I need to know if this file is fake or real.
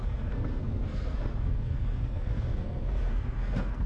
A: fake